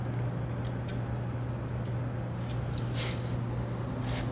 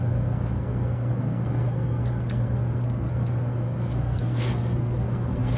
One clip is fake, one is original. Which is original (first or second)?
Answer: first